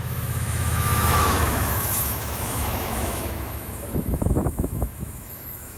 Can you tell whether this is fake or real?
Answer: fake